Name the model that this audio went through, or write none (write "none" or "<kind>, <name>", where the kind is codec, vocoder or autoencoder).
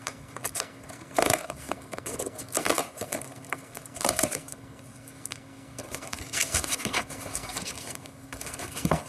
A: codec, SNAC